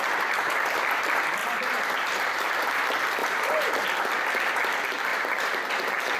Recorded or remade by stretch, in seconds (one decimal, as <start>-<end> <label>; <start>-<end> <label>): 0.0-1.4 recorded; 1.4-2.5 remade; 2.5-3.2 recorded; 3.2-3.7 remade; 3.7-5.1 recorded; 5.1-5.7 remade; 5.7-6.2 recorded